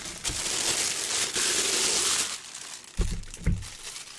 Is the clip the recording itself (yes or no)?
yes